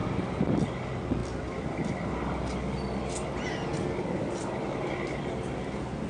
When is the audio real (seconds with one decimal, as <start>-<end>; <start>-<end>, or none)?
0.0-6.1